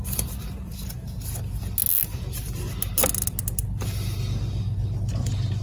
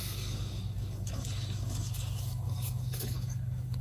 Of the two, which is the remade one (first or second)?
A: second